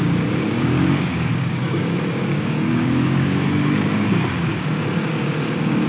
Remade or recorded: remade